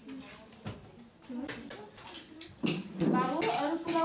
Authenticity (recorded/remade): recorded